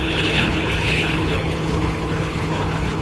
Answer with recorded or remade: remade